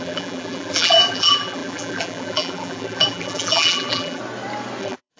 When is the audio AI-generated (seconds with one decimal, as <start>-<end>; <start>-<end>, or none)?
0.0-4.2; 4.8-5.2